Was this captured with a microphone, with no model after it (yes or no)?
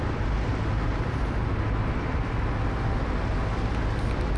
yes